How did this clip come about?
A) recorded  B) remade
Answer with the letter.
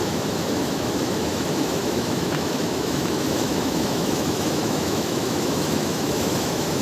B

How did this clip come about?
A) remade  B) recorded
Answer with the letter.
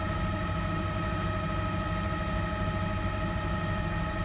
B